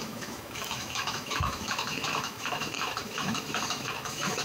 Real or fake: fake